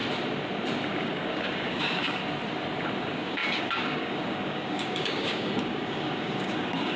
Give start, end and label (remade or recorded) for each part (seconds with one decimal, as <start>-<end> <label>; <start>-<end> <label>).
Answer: 0.0-1.0 recorded; 1.0-2.2 remade; 2.2-3.0 recorded; 3.0-7.0 remade

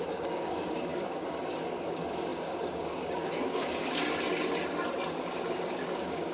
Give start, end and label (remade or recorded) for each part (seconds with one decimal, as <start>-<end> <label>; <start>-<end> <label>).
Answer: 0.0-4.0 remade; 4.0-5.2 recorded; 5.2-6.3 remade

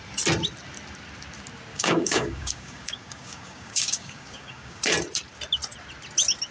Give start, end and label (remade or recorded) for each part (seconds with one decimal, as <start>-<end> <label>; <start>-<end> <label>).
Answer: 0.0-1.7 recorded; 1.7-4.8 remade; 4.8-6.5 recorded